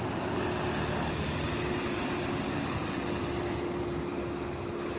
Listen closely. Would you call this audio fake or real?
real